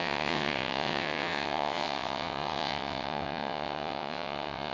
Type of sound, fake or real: fake